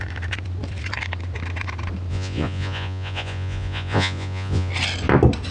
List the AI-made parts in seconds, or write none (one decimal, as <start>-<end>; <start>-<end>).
2.1-4.7